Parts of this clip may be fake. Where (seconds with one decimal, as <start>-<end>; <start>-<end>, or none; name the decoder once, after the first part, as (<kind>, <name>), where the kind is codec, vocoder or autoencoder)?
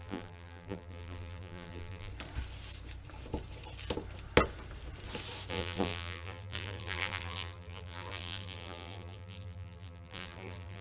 0.0-2.1 (vocoder, BigVGAN v2); 5.5-10.8